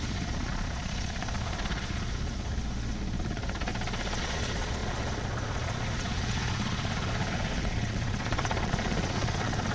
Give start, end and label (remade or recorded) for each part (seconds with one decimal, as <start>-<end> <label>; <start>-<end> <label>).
0.0-2.6 remade; 2.6-3.2 recorded; 3.2-3.7 remade; 3.7-4.2 recorded; 4.2-9.7 remade